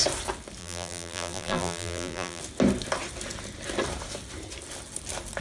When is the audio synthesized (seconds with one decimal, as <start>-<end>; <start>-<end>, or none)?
0.6-2.4